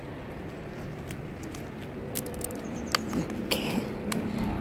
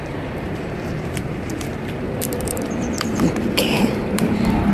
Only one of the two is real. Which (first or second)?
first